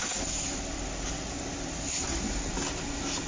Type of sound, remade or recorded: recorded